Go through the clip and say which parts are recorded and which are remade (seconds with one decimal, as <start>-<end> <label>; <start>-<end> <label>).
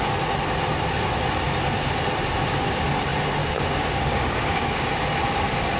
0.0-3.4 recorded; 3.4-4.9 remade; 4.9-5.8 recorded